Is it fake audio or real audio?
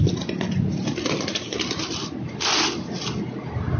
real